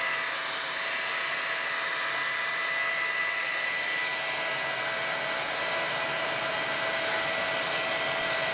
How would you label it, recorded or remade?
recorded